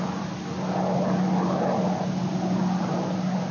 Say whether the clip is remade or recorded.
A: recorded